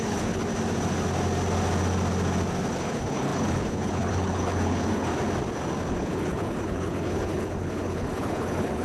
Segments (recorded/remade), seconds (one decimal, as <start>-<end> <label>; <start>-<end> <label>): 0.0-0.5 remade; 0.5-2.7 recorded; 2.7-5.1 remade; 5.1-5.9 recorded; 5.9-8.8 remade